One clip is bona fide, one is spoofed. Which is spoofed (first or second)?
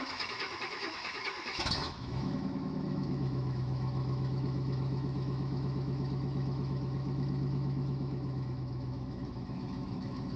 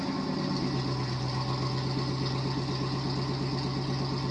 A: first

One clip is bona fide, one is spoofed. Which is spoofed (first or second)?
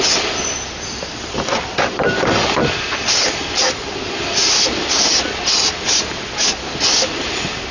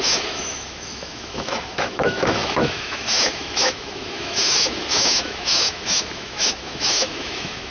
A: second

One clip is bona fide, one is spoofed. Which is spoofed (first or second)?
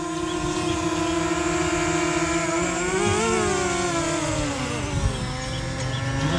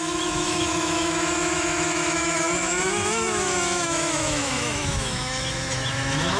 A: second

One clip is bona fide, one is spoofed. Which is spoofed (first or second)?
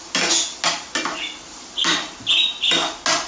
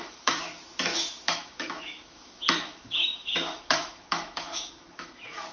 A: second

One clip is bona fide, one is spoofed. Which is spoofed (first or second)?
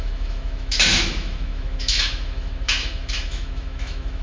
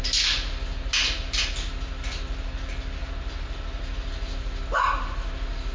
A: first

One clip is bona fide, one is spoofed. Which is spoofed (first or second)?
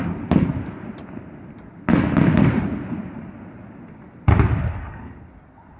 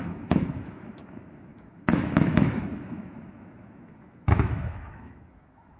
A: second